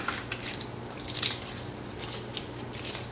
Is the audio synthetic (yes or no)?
no